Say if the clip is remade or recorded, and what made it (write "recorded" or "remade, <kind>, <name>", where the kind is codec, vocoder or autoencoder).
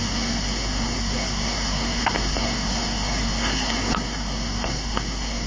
remade, codec, SNAC